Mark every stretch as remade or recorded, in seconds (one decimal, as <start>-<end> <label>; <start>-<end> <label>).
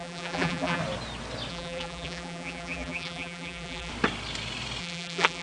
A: 0.0-0.8 remade; 0.8-1.5 recorded; 1.5-3.9 remade; 3.9-4.8 recorded; 4.8-5.4 remade